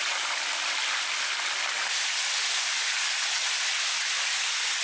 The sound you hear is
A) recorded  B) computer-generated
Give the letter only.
A